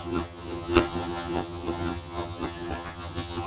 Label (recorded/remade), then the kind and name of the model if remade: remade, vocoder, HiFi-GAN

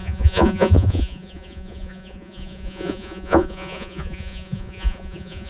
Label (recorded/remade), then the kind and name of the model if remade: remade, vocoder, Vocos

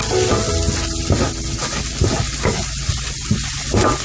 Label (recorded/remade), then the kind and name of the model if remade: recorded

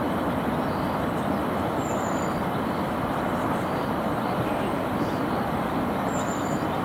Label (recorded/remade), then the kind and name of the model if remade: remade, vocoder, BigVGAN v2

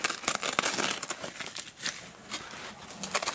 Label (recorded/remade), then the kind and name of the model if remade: recorded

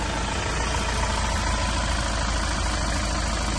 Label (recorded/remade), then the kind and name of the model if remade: recorded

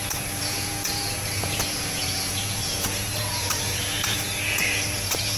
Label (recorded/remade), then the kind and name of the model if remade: remade, vocoder, Vocos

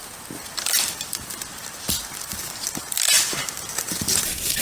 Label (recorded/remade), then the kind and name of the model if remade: remade, vocoder, BigVGAN v2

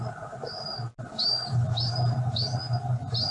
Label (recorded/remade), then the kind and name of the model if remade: recorded